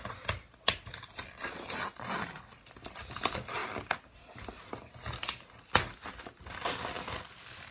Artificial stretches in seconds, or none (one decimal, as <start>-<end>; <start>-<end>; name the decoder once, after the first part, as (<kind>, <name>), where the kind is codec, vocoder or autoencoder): none